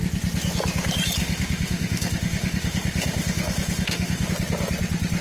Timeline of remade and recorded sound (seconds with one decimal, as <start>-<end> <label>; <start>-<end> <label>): 0.0-1.2 recorded; 1.2-4.3 remade; 4.3-5.2 recorded